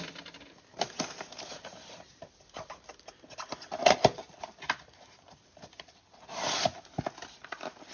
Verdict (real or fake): real